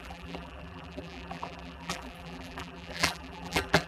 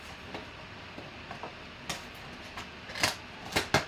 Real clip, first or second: second